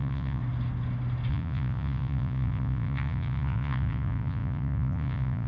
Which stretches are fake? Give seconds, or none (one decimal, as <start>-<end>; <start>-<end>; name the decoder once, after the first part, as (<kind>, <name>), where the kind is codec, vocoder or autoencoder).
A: 0.0-0.4 (vocoder, Vocos); 1.3-5.5